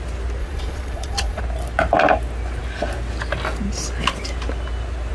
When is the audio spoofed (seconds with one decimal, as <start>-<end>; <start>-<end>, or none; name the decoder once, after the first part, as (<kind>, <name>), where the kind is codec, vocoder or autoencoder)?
0.4-1.4 (vocoder, Vocos)